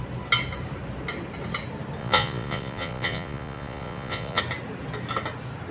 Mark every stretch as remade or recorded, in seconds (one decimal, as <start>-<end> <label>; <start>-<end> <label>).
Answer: 0.0-2.0 recorded; 2.0-4.4 remade; 4.4-5.7 recorded